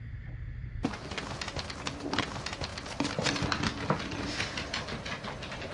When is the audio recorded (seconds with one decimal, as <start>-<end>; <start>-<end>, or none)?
0.0-5.7